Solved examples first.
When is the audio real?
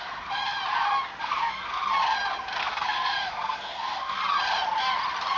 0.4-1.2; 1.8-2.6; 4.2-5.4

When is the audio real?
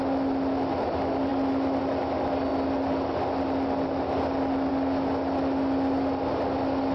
0.0-6.9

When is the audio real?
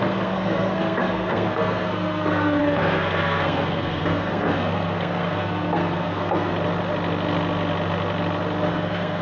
6.5-8.7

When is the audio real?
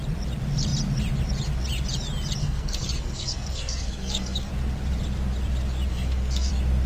0.0-2.4; 4.5-5.9; 6.5-6.9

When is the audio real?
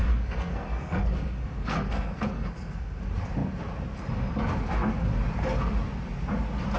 3.0-6.8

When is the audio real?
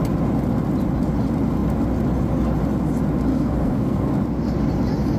0.0-3.3; 4.1-5.2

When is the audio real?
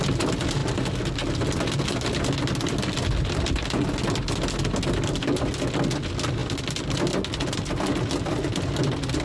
0.0-9.2